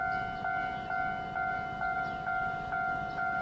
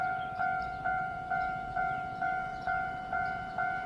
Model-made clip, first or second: second